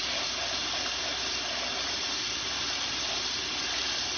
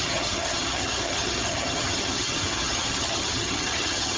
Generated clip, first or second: second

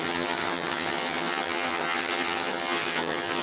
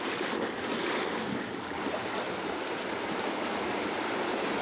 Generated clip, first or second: first